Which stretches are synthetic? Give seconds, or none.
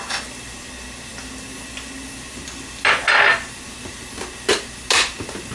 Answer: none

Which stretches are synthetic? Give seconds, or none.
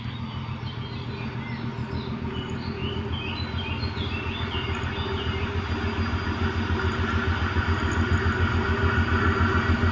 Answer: none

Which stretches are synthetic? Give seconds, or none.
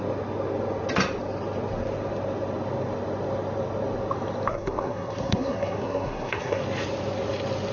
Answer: 4.5-6.6 (codec, SNAC)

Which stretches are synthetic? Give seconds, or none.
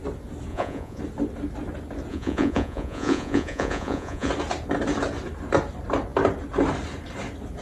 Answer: 0.5-1.0 (vocoder, Vocos); 2.1-4.3